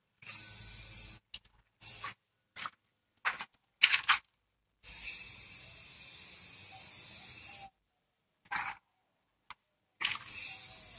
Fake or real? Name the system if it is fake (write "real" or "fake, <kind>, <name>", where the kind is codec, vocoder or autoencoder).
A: real